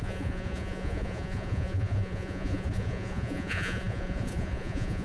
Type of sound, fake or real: fake